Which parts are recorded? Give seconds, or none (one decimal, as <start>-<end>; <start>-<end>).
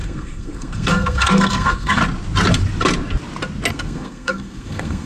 2.0-3.7